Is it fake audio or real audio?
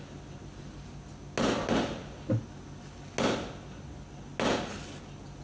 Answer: real